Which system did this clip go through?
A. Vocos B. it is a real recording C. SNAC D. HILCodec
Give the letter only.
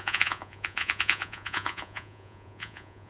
A